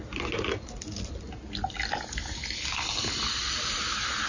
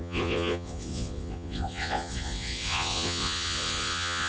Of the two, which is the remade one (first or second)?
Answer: second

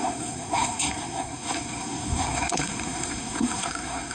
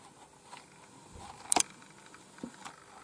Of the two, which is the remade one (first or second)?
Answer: first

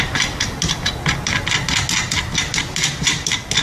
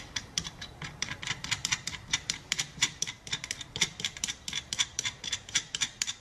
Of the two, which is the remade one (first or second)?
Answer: second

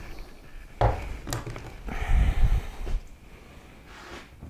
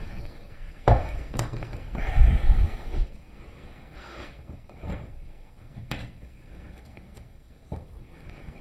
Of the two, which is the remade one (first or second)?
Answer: second